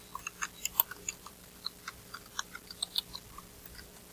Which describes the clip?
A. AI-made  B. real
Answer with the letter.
B